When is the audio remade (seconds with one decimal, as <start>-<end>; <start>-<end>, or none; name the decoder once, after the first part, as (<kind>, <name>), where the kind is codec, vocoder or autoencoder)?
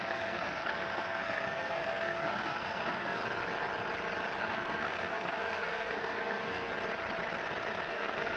0.0-3.2 (codec, SNAC); 4.4-6.7; 7.9-8.4